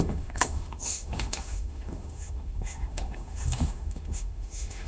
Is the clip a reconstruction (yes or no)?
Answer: yes